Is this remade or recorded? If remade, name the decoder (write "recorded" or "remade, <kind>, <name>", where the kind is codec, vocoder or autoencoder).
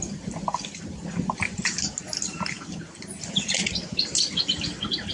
recorded